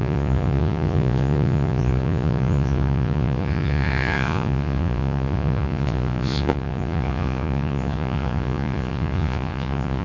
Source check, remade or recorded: remade